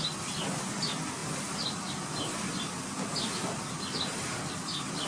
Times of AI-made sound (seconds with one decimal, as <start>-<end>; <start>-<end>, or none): none